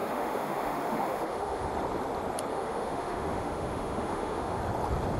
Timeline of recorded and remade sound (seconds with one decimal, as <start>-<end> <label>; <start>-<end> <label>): 0.0-1.7 remade; 1.7-2.5 recorded; 2.5-4.6 remade; 4.6-5.2 recorded